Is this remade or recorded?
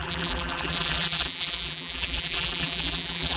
remade